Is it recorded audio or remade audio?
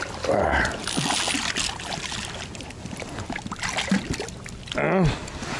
recorded